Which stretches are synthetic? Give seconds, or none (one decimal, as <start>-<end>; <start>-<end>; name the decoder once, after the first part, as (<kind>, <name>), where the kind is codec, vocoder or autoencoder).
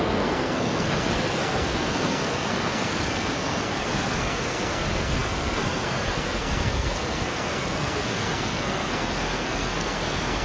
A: 0.0-10.4 (codec, SNAC)